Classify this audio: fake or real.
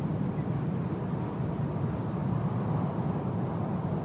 fake